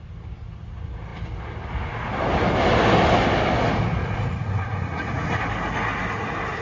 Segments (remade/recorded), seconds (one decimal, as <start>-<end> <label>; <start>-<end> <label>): 0.0-4.0 recorded; 4.0-5.4 remade; 5.4-6.6 recorded